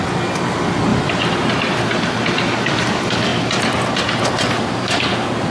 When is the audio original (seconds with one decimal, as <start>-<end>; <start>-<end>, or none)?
0.0-0.9; 1.5-5.5